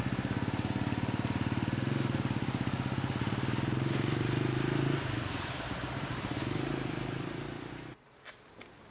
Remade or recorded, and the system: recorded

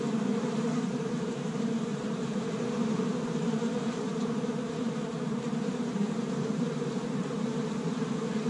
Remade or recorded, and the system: remade, vocoder, BigVGAN v2